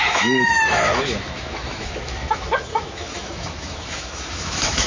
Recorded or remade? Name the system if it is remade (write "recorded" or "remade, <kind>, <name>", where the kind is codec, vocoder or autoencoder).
remade, autoencoder, DAC-VAE